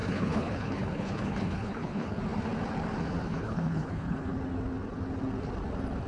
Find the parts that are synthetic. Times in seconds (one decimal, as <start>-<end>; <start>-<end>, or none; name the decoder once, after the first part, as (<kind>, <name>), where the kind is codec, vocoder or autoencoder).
0.0-2.2 (codec, HILCodec); 3.3-4.3

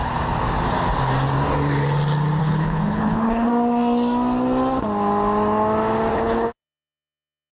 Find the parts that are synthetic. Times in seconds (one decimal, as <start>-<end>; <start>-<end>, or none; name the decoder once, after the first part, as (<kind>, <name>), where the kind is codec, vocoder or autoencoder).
2.4-3.5 (codec, HILCodec); 6.1-7.5